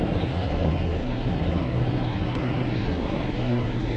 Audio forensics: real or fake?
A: fake